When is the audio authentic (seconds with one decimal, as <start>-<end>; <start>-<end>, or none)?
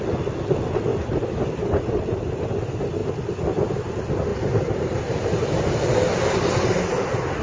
0.0-0.9; 1.8-4.3; 5.8-7.4